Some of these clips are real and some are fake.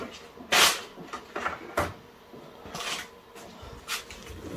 real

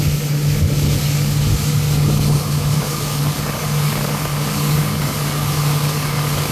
fake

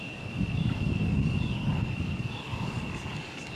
fake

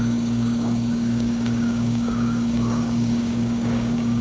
fake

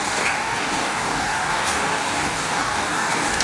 fake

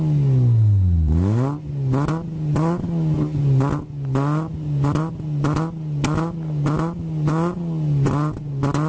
real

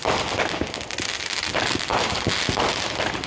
real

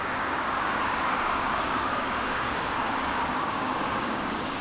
fake